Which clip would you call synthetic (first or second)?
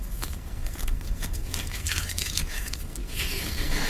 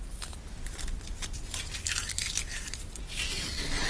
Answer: first